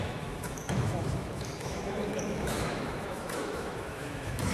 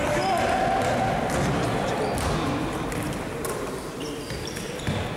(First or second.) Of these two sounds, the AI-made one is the first